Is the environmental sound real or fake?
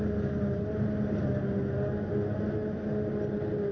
real